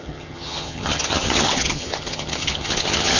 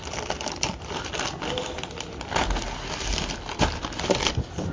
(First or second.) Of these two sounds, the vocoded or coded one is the first